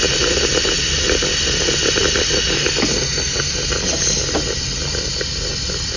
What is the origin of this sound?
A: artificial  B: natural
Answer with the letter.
B